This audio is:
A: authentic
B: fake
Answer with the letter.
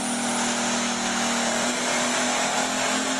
A